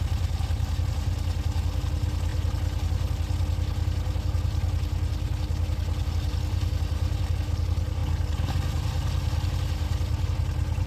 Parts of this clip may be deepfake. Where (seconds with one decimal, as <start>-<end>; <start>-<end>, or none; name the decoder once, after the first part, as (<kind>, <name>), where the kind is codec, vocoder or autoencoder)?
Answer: none